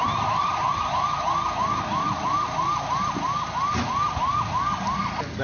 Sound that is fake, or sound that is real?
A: real